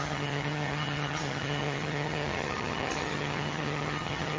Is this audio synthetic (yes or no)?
yes